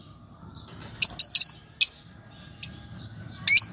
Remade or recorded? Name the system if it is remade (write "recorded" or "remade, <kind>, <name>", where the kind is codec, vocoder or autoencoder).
recorded